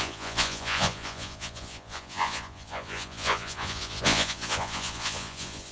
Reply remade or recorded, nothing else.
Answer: remade